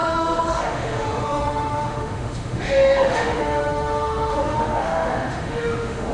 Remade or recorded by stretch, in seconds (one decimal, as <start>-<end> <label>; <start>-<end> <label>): 0.0-6.1 remade